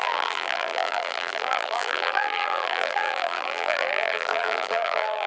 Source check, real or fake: fake